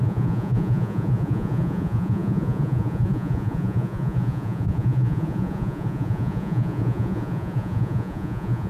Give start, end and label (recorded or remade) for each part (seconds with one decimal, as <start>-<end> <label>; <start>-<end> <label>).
0.0-8.7 remade